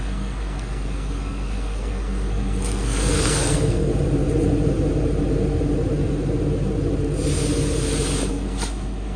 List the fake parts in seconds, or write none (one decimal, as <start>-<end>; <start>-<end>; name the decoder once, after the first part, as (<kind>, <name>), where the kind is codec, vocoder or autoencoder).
0.0-3.9 (codec, SNAC); 8.3-9.2